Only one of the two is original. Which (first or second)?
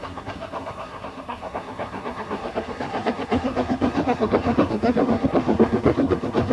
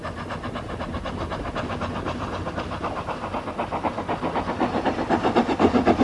second